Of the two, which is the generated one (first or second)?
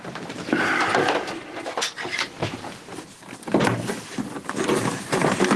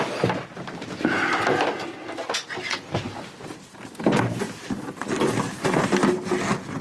first